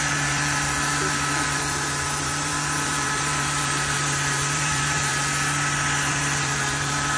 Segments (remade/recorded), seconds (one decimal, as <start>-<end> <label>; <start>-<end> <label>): 0.0-5.1 remade; 5.1-6.1 recorded; 6.1-7.2 remade